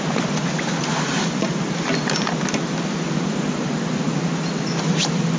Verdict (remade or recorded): recorded